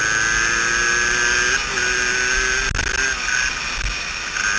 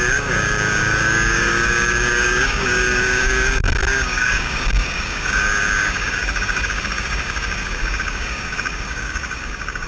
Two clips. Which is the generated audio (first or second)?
second